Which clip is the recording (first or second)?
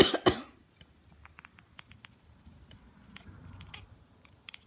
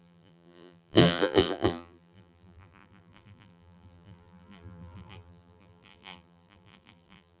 first